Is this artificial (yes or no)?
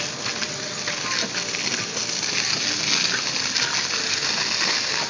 no